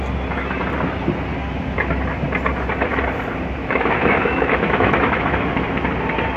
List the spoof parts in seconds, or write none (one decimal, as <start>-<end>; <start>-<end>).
3.6-5.5